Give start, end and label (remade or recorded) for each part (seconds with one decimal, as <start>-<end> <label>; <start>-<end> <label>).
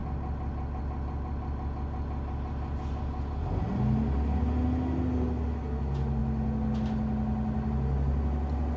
0.0-8.8 recorded